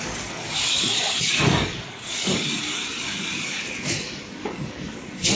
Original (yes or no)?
no